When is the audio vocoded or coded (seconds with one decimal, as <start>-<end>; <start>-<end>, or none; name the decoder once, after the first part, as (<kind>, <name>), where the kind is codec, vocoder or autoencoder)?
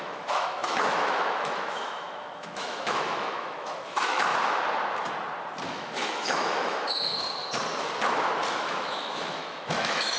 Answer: 0.0-4.3 (autoencoder, DAC-VAE); 5.7-7.1; 8.5-10.2